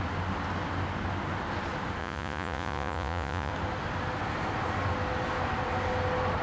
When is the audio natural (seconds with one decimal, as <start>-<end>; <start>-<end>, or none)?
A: 0.0-2.0; 3.5-6.4